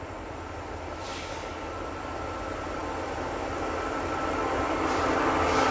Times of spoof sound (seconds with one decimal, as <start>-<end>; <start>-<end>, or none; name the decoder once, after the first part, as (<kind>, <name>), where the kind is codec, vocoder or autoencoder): 1.1-1.7 (codec, DAC)